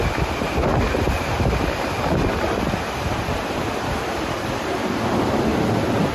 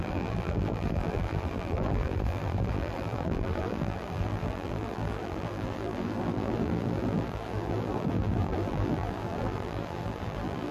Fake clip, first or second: second